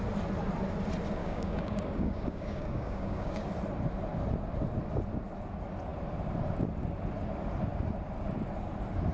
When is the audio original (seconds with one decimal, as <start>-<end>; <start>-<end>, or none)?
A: 0.0-1.2; 3.5-9.1